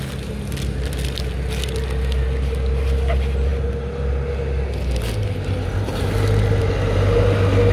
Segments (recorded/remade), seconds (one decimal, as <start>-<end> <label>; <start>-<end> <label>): 0.0-7.7 recorded